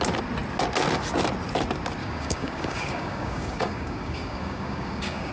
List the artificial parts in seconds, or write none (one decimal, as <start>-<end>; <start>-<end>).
2.0-5.3